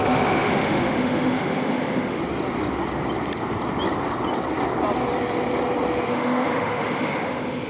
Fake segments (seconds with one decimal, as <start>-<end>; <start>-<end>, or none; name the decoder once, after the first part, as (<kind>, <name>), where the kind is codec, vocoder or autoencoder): 0.0-2.2 (autoencoder, DAC-VAE); 6.1-7.7